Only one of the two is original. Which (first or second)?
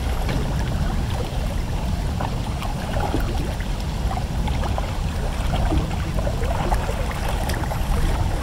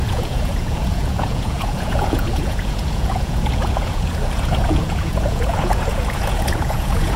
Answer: first